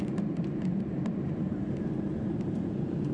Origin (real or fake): fake